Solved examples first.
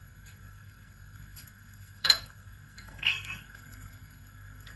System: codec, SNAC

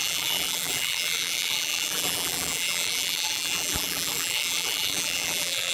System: vocoder, BigVGAN v2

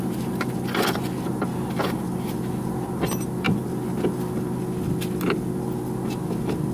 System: none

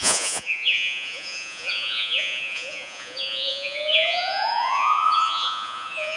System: vocoder, Vocos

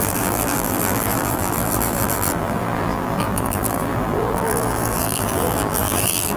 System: vocoder, BigVGAN v2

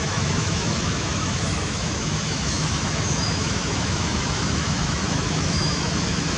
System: autoencoder, DAC-VAE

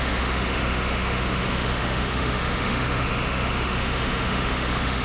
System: autoencoder, DAC-VAE